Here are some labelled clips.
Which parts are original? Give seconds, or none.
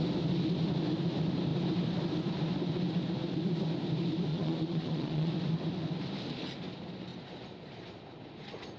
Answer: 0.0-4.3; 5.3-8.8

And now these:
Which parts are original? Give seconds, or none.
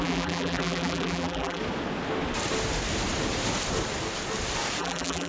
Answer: 1.6-4.8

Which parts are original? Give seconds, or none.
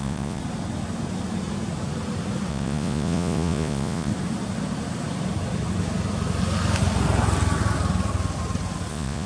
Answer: 0.4-2.5; 4.1-8.9